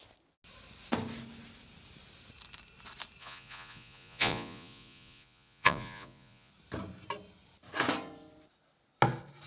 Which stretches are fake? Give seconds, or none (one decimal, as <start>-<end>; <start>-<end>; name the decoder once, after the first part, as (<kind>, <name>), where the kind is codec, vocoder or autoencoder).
3.2-6.5 (vocoder, Vocos)